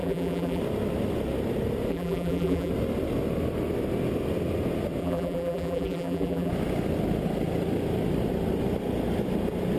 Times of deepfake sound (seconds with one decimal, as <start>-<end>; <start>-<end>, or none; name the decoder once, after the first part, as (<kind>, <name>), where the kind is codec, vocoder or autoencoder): 0.0-0.6 (vocoder, BigVGAN v2); 1.9-2.7; 5.0-6.5